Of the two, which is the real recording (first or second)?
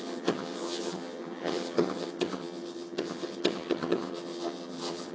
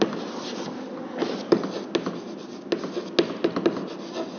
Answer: second